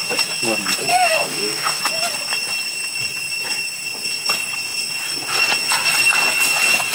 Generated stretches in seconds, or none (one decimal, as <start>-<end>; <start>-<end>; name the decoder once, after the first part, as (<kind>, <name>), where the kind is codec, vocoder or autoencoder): 0.9-1.8 (autoencoder, DAC-VAE)